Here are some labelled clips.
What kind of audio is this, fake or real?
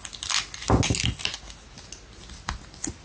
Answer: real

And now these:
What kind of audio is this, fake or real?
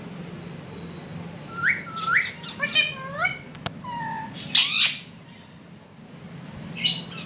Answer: real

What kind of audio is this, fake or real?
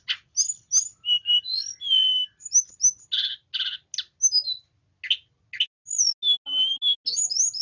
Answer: real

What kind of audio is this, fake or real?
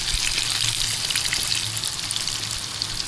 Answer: real